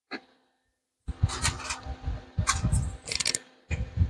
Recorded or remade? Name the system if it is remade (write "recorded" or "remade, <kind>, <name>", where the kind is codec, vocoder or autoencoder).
recorded